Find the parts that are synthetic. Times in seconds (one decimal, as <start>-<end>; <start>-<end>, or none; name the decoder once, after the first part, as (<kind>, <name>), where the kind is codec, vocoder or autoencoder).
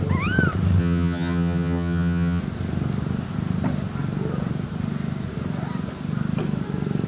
0.8-2.4 (vocoder, HiFi-GAN)